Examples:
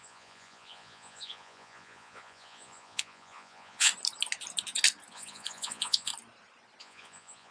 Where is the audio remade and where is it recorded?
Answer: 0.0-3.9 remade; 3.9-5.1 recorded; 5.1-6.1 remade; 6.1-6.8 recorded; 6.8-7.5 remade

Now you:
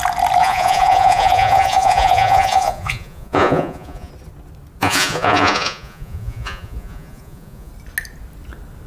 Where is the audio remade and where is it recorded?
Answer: 0.0-0.4 recorded; 0.4-4.1 remade; 4.1-4.8 recorded; 4.8-7.7 remade; 7.7-8.9 recorded